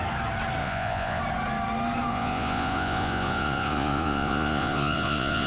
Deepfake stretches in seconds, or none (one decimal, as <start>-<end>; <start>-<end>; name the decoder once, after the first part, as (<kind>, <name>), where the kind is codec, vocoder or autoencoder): 0.6-1.2 (vocoder, Vocos); 2.1-5.5